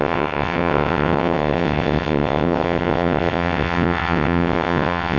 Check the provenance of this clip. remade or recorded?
remade